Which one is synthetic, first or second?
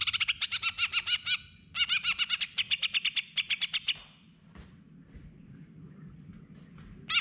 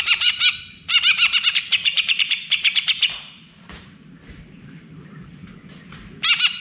second